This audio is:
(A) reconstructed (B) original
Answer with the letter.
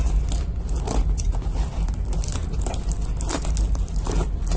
B